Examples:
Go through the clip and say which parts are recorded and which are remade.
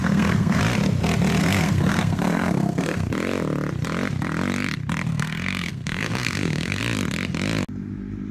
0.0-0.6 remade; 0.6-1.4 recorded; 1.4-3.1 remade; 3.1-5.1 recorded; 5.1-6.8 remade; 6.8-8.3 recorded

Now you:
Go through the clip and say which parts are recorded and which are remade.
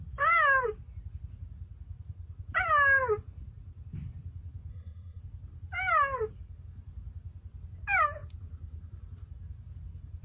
0.0-4.7 recorded; 4.7-5.2 remade; 5.2-10.2 recorded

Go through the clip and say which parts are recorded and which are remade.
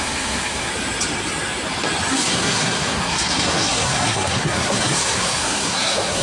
0.0-0.7 remade; 0.7-2.1 recorded; 2.1-6.2 remade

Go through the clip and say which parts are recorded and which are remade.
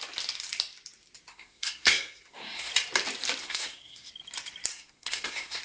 0.0-1.3 recorded; 1.3-2.7 remade; 2.7-3.4 recorded; 3.4-4.1 remade; 4.1-4.7 recorded; 4.7-5.6 remade